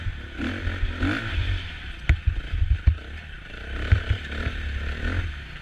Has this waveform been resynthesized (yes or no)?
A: no